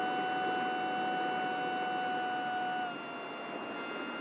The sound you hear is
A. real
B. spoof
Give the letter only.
A